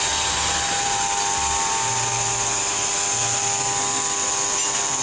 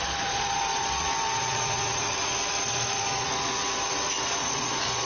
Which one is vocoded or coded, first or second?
second